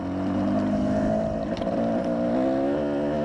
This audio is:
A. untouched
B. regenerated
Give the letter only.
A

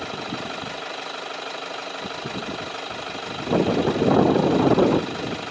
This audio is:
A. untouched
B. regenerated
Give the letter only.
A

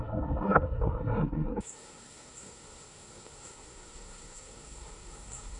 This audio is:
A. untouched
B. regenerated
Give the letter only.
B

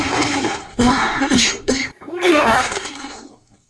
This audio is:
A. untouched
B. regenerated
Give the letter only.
B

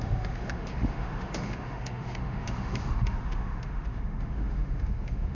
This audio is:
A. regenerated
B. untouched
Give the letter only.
A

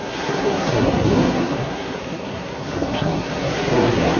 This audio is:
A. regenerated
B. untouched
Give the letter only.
A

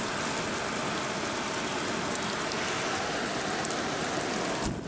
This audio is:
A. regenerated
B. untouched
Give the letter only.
B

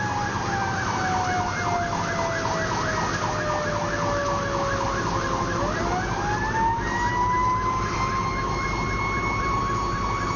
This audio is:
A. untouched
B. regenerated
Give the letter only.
A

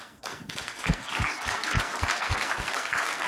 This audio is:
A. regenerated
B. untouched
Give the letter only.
A